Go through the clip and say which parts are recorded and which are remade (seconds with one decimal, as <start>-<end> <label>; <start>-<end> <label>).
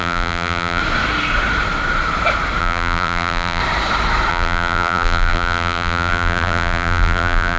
0.0-0.8 remade; 0.8-2.6 recorded; 2.6-3.6 remade; 3.6-4.3 recorded; 4.3-7.6 remade